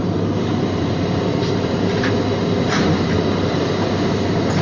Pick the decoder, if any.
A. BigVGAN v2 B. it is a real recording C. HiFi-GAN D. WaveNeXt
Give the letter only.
A